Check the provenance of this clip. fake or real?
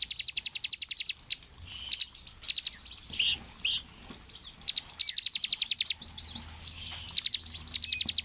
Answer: real